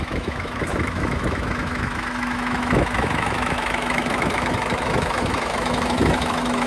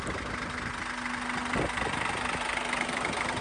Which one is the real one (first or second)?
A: second